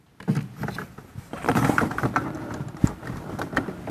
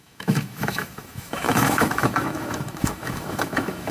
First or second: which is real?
first